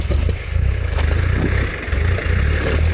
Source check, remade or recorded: recorded